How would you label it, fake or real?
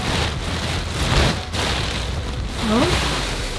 real